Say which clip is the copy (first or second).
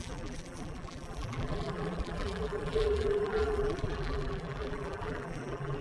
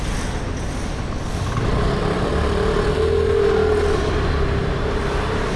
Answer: first